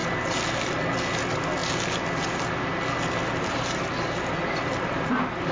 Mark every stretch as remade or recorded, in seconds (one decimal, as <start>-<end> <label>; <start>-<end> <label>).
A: 0.0-5.5 recorded